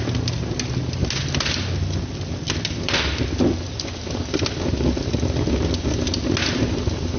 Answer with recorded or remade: recorded